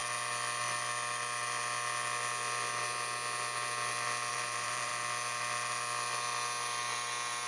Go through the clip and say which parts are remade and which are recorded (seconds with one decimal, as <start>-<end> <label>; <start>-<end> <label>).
0.0-4.3 recorded; 4.3-4.9 remade; 4.9-7.5 recorded